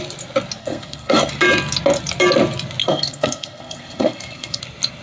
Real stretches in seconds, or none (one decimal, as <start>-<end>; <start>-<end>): 0.0-0.6; 1.2-2.8; 4.6-5.0